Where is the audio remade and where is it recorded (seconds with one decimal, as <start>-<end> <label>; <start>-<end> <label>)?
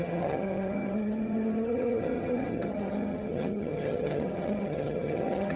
0.0-5.6 remade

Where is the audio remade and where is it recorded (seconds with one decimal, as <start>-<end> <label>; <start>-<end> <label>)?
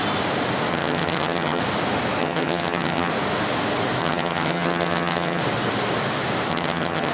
0.0-0.7 recorded; 0.7-1.6 remade; 1.6-2.2 recorded; 2.2-3.1 remade; 3.1-4.0 recorded; 4.0-5.4 remade; 5.4-6.5 recorded; 6.5-7.1 remade